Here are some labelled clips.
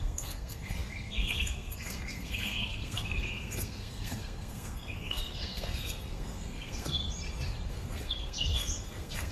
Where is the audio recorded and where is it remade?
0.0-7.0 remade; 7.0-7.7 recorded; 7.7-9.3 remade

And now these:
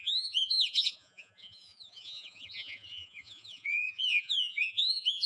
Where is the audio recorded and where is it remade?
0.0-5.3 remade

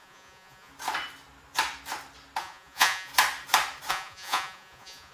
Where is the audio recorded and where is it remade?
0.0-0.7 remade; 0.7-2.4 recorded; 2.4-3.1 remade; 3.1-3.9 recorded; 3.9-5.1 remade

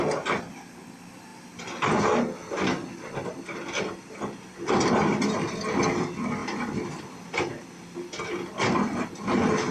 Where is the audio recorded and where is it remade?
0.0-9.7 recorded

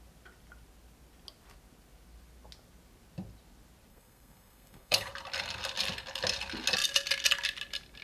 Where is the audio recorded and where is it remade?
0.0-3.9 recorded; 3.9-5.1 remade; 5.1-8.0 recorded

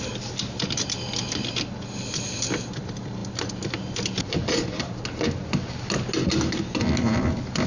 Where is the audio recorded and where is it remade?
0.0-7.7 recorded

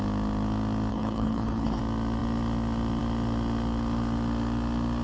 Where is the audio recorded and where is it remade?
0.0-0.9 recorded; 0.9-1.8 remade; 1.8-5.0 recorded

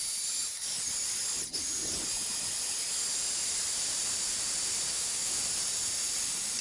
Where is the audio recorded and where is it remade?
0.0-4.9 recorded; 4.9-5.4 remade; 5.4-6.6 recorded